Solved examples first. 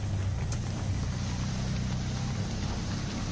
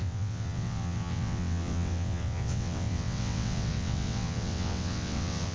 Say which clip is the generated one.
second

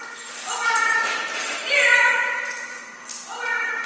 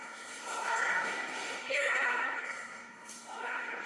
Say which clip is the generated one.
second